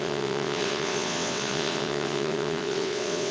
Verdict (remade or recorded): remade